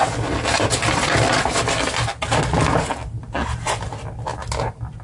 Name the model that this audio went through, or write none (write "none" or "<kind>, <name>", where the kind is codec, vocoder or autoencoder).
none